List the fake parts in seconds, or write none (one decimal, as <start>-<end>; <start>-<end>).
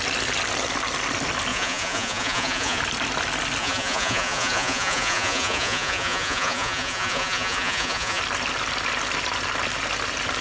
1.5-2.8; 3.6-8.2